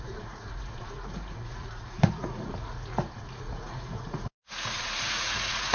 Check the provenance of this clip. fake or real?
fake